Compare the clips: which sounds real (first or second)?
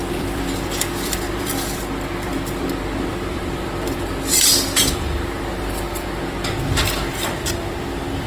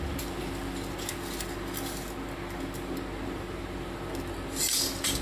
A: second